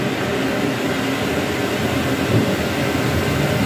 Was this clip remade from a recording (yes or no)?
no